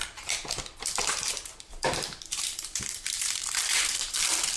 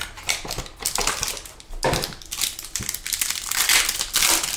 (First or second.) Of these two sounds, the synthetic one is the first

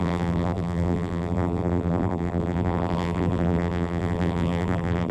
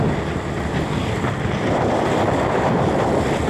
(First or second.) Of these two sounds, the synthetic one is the first